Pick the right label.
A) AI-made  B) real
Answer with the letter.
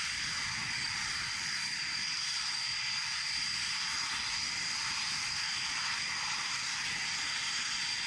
A